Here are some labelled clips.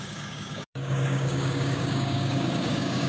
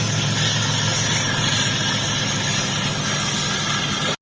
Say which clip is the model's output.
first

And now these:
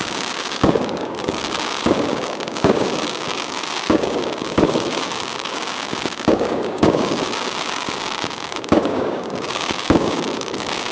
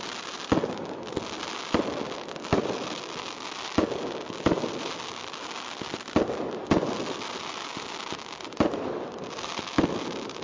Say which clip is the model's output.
first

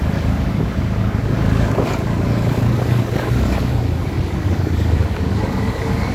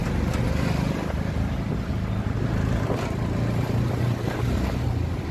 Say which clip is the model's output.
first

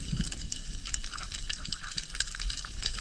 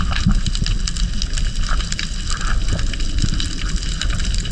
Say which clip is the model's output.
first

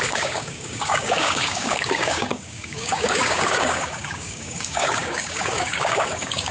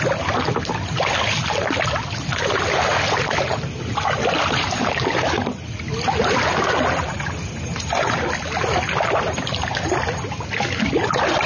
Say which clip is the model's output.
first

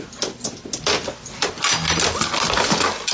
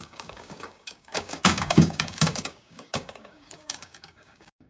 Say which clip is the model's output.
second